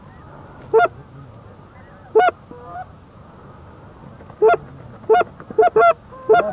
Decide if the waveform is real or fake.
real